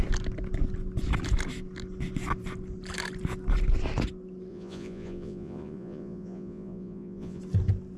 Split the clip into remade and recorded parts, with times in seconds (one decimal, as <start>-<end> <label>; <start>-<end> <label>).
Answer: 0.0-4.5 recorded; 4.5-7.4 remade; 7.4-8.0 recorded